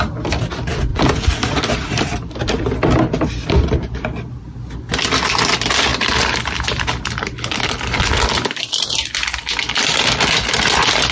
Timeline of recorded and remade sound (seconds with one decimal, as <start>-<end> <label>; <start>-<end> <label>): 0.0-0.9 recorded; 0.9-2.7 remade; 2.7-11.1 recorded